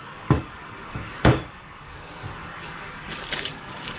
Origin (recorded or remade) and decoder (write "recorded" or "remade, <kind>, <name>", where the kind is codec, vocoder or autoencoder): remade, codec, DAC